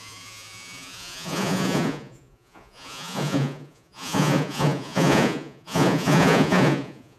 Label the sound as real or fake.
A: fake